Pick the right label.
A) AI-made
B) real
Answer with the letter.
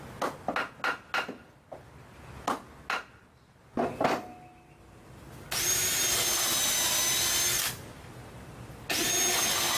B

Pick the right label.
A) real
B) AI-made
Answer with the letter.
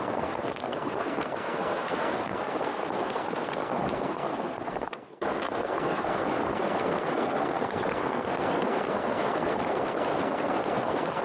B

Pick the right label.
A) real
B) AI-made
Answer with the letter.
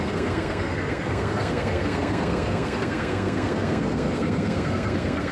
B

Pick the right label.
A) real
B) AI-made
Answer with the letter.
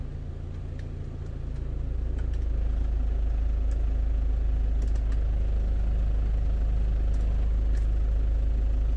A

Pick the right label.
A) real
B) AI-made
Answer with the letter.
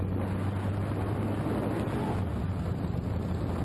A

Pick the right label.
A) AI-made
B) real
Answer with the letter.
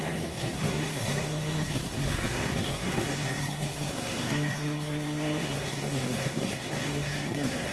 A